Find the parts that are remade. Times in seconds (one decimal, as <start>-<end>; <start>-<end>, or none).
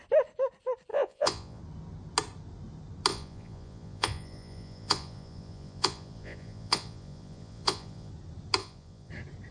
0.9-1.6; 3.1-8.1; 8.6-9.1